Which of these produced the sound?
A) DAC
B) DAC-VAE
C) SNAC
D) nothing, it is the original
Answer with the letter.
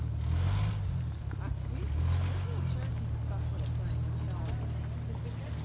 D